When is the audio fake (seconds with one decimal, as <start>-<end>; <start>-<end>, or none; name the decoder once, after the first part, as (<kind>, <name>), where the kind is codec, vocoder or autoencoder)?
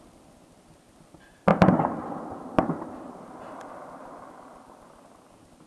none